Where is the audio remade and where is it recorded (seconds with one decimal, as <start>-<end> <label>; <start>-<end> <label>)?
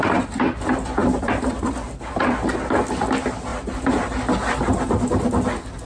0.0-1.0 recorded; 1.0-1.7 remade; 1.7-3.5 recorded; 3.5-4.1 remade; 4.1-5.8 recorded